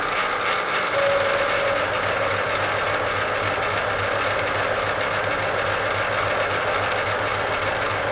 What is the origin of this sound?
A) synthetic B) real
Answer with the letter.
B